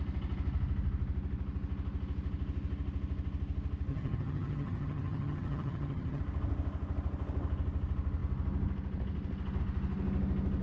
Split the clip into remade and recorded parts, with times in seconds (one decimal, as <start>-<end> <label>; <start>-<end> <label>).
0.0-3.9 recorded; 3.9-6.2 remade; 6.2-10.6 recorded